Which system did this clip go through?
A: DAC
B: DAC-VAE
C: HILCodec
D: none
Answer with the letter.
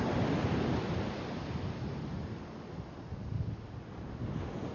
D